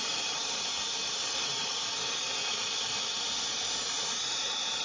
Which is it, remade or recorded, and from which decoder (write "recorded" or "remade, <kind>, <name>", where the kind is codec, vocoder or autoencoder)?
recorded